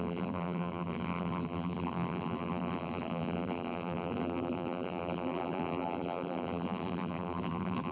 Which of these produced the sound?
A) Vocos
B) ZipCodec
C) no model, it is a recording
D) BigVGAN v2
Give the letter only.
D